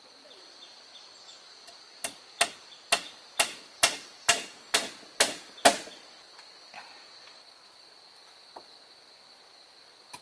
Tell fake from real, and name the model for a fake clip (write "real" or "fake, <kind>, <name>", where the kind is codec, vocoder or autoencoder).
real